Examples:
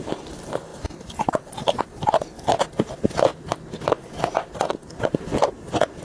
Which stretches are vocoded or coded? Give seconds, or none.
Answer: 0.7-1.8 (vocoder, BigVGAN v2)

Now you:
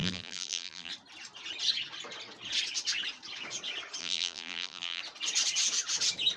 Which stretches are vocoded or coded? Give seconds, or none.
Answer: 0.0-0.9 (vocoder, BigVGAN v2); 4.0-5.0

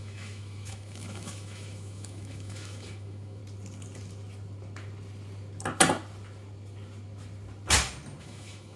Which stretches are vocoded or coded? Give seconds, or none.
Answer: 0.0-3.4 (autoencoder, DAC-VAE); 8.2-8.8

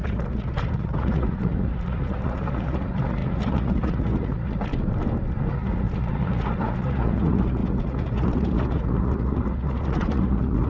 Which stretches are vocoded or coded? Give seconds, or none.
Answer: 0.0-4.7 (vocoder, Vocos); 5.5-10.7

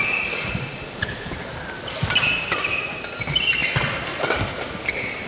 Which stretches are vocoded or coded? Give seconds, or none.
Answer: none

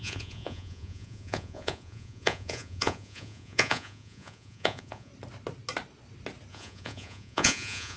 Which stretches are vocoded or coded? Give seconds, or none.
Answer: 0.0-5.1 (vocoder, Vocos); 6.5-8.0